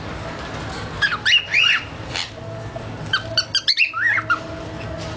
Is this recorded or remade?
recorded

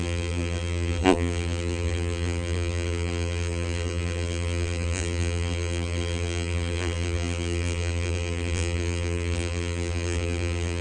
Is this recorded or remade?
remade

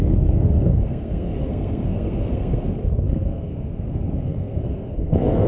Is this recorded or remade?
remade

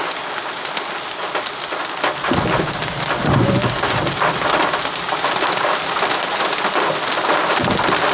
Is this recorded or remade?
recorded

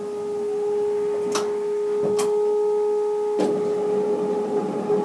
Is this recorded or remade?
recorded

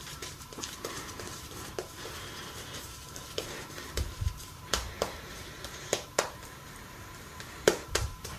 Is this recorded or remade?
remade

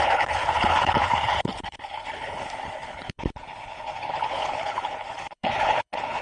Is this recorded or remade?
remade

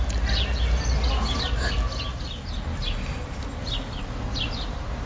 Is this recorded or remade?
recorded